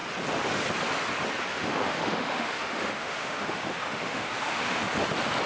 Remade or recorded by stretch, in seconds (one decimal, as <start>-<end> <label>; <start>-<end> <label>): 0.0-1.5 recorded; 1.5-4.8 remade; 4.8-5.5 recorded